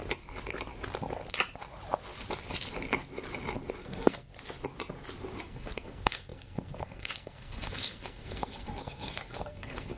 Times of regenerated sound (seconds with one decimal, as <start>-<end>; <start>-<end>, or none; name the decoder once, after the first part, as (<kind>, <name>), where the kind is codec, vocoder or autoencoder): 3.8-4.3 (codec, SNAC); 5.4-10.0